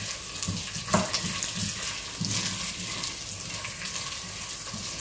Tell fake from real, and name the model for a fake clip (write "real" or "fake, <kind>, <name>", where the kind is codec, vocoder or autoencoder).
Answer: real